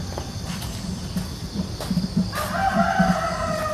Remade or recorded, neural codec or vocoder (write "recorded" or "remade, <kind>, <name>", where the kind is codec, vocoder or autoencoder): recorded